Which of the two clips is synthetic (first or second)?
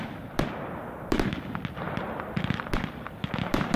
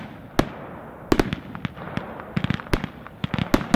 first